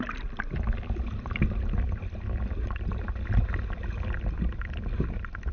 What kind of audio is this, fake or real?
real